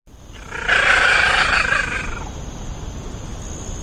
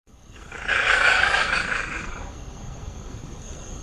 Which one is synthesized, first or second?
second